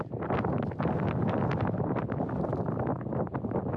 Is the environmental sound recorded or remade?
recorded